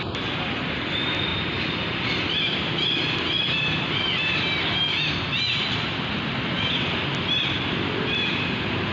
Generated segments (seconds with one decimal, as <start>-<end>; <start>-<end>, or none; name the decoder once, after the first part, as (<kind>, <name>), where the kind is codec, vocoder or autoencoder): none